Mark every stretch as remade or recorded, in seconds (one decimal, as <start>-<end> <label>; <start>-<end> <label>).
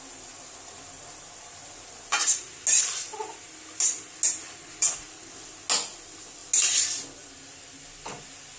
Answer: 0.0-8.6 recorded